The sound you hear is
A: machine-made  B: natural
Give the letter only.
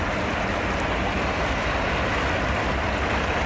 B